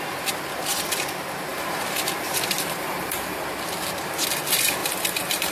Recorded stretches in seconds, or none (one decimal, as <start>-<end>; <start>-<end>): 0.0-1.5; 3.4-4.8